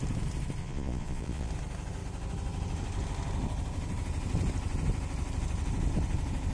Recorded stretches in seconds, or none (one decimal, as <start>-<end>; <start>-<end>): 0.0-0.6; 1.5-6.5